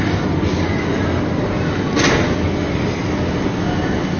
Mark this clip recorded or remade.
recorded